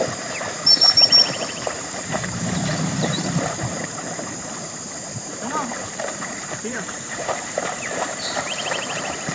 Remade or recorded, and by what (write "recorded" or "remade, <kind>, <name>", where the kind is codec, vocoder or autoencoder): remade, vocoder, BigVGAN v2